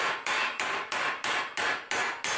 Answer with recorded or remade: recorded